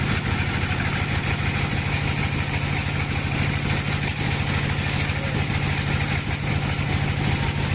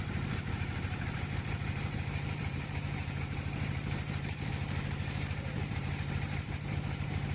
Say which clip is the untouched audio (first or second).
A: first